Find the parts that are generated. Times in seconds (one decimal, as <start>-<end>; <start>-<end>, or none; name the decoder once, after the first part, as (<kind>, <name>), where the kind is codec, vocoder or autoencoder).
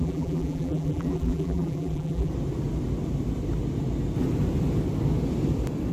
0.0-2.3 (vocoder, BigVGAN v2)